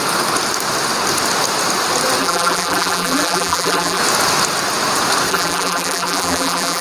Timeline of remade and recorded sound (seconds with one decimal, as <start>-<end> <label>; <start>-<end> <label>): 0.0-2.2 recorded; 2.2-4.0 remade; 4.0-5.3 recorded; 5.3-6.8 remade